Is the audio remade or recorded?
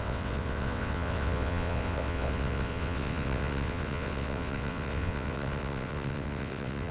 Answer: remade